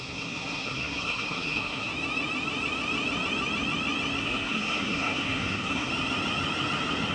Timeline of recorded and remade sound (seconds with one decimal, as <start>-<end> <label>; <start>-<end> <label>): 0.0-1.9 remade; 1.9-4.2 recorded; 4.2-5.9 remade; 5.9-7.1 recorded